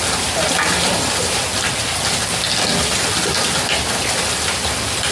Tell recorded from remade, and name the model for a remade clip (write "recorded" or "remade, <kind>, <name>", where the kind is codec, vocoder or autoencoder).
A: recorded